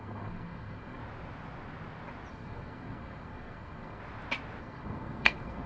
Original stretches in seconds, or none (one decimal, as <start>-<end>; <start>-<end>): 1.0-2.3; 4.0-4.6